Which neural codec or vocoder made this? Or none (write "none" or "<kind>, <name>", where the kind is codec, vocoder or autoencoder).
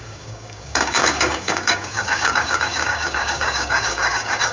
codec, DAC